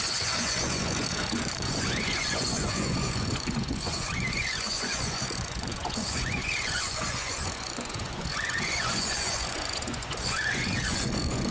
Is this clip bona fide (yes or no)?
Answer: no